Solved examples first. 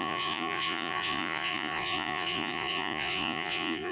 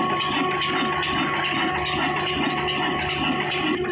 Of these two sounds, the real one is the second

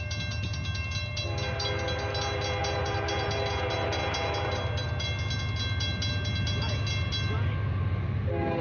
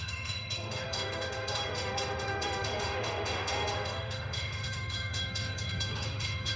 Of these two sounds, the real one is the first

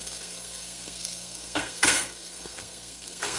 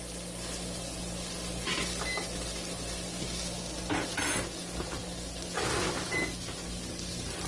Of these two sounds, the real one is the second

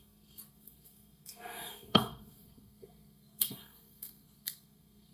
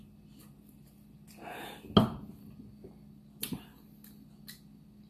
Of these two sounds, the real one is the second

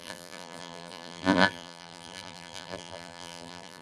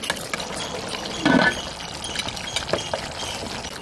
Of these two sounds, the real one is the second